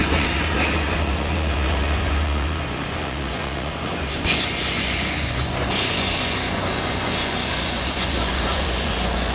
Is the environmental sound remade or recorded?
remade